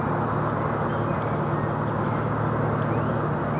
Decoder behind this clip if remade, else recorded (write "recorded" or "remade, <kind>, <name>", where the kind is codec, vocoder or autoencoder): recorded